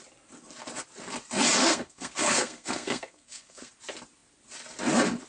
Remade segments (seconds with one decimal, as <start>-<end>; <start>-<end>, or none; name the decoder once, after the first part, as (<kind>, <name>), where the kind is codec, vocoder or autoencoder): 1.6-3.7 (codec, SNAC)